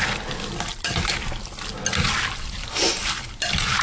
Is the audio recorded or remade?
recorded